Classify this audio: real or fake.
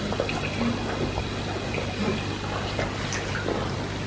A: real